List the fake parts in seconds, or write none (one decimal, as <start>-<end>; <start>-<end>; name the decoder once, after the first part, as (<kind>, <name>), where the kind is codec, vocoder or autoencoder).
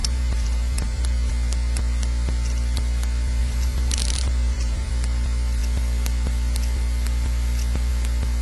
0.0-1.3 (vocoder, BigVGAN v2); 3.4-4.9